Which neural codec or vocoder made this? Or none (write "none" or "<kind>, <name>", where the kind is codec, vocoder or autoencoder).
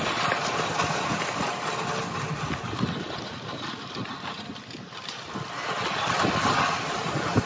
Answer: none